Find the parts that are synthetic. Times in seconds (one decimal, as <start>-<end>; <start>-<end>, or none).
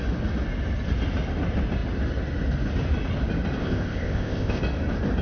3.6-4.6